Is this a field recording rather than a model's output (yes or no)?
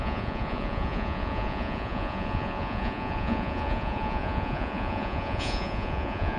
no